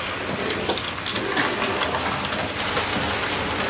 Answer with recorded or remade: recorded